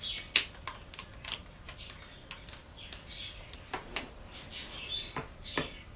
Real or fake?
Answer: real